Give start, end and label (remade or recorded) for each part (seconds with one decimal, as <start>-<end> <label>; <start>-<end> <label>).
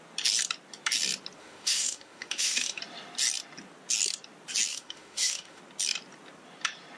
0.0-1.4 recorded; 1.4-2.8 remade; 2.8-4.7 recorded; 4.7-5.6 remade; 5.6-7.0 recorded